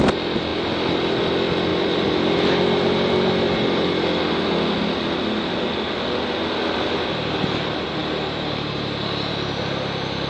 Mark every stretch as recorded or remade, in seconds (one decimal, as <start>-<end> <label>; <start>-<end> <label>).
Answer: 0.0-1.7 recorded; 1.7-4.4 remade; 4.4-10.3 recorded